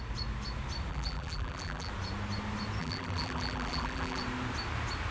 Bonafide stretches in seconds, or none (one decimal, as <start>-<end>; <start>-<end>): 0.0-0.9; 1.9-2.8; 4.2-5.1